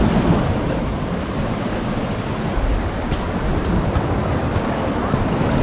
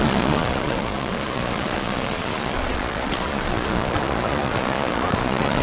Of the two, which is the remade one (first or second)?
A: second